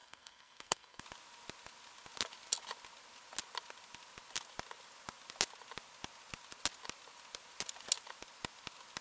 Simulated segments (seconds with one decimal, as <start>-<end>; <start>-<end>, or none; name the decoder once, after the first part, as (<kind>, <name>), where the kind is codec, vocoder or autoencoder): 0.0-1.0 (codec, SNAC)